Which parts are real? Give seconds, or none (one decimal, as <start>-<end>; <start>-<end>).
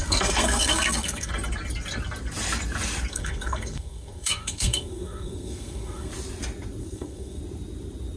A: 1.3-3.1; 6.1-6.8; 7.4-8.2